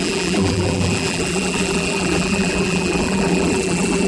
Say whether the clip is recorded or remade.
remade